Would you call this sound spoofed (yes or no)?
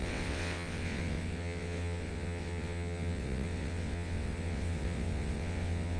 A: yes